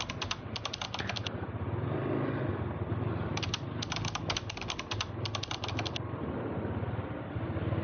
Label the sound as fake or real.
real